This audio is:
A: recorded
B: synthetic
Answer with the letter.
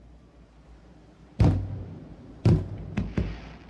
A